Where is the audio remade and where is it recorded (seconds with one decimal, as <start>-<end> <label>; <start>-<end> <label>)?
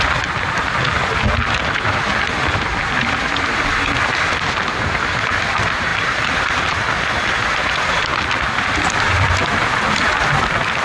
0.0-5.9 recorded; 5.9-6.9 remade; 6.9-10.8 recorded